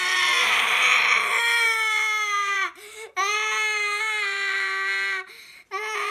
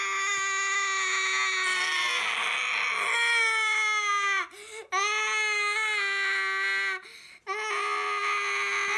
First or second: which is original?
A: second